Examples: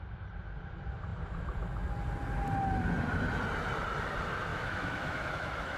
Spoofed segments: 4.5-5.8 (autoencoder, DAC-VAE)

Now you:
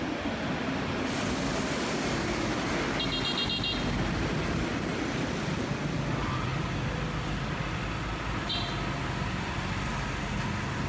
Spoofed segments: none

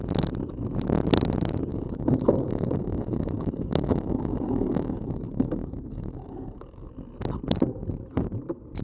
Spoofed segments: 1.7-6.9 (codec, DAC)